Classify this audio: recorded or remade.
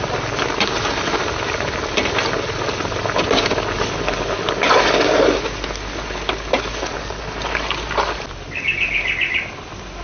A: recorded